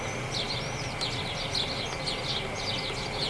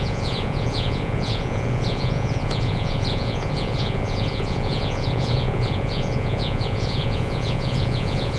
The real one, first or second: first